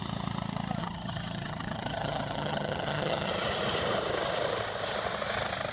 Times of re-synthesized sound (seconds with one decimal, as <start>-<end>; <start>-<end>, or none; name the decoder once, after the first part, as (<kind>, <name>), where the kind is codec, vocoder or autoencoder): 0.8-3.3 (vocoder, HiFi-GAN)